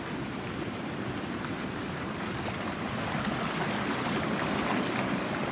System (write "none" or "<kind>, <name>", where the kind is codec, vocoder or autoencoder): none